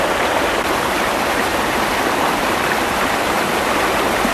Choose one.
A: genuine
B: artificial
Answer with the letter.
A